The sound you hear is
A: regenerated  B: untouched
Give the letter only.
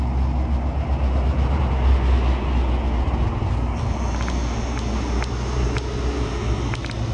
B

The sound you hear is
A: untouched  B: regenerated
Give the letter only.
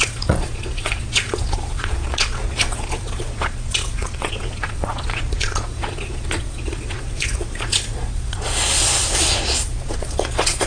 B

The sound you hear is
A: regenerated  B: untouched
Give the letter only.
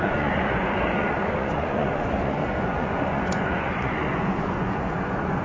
A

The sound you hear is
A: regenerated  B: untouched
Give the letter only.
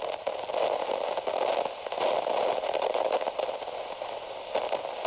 B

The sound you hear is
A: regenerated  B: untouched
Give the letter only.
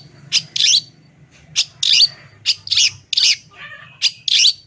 B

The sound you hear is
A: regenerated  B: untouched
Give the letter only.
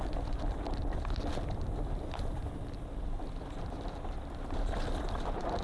B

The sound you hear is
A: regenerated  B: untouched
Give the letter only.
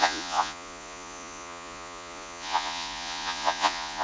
A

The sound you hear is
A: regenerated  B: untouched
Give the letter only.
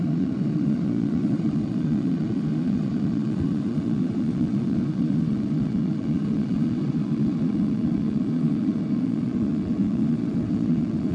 A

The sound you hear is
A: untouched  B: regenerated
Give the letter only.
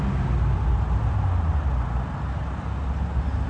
A